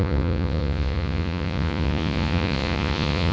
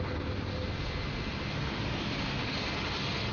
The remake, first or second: first